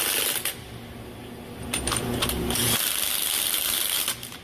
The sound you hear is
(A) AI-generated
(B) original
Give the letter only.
B